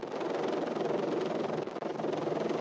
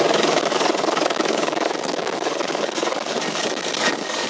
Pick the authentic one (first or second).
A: first